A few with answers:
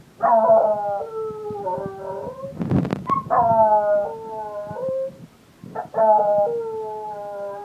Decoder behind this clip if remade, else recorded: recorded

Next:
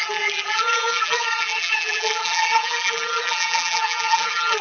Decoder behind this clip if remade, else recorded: remade, vocoder, BigVGAN v2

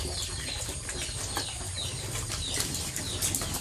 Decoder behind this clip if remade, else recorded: recorded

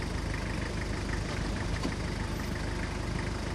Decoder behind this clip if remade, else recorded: recorded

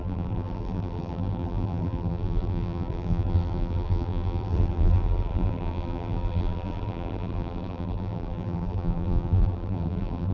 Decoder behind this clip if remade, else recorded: remade, vocoder, BigVGAN v2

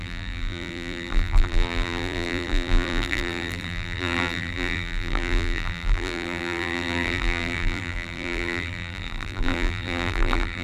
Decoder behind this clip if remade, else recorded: remade, vocoder, BigVGAN v2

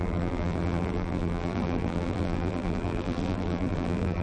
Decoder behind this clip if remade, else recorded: remade, vocoder, BigVGAN v2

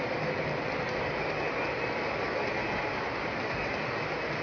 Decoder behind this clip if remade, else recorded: recorded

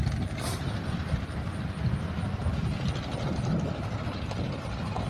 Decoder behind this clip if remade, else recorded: recorded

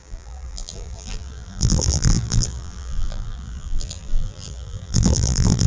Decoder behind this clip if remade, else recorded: remade, vocoder, BigVGAN v2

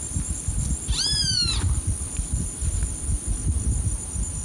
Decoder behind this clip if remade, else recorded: remade, vocoder, BigVGAN v2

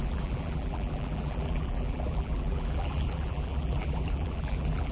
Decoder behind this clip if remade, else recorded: remade, vocoder, BigVGAN v2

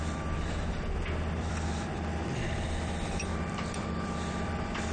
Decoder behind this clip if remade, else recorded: remade, vocoder, BigVGAN v2